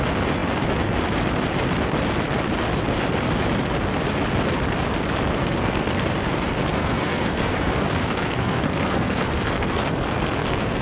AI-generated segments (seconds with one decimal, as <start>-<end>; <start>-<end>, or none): 5.4-6.0; 6.7-10.8